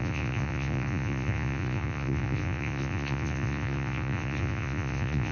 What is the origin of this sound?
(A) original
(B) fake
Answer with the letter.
B